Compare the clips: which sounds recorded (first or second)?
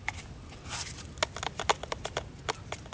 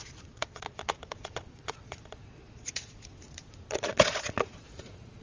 first